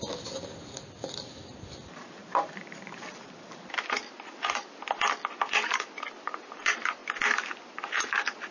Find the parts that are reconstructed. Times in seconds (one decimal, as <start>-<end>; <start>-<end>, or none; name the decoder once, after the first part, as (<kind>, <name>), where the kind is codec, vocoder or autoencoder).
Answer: 2.2-5.3 (vocoder, BigVGAN v2)